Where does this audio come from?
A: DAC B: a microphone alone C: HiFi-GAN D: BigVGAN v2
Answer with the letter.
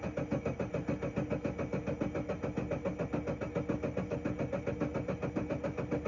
B